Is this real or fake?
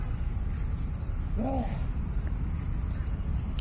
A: real